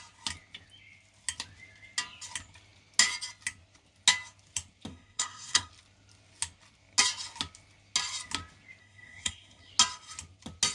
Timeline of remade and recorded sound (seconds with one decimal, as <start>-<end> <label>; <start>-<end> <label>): 0.0-4.9 recorded; 4.9-5.7 remade; 5.7-8.8 recorded; 8.8-9.7 remade; 9.7-10.7 recorded